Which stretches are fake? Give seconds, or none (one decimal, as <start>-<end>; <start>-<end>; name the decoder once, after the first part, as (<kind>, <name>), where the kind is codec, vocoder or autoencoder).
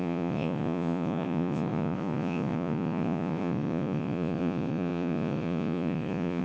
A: 0.0-6.4 (vocoder, Vocos)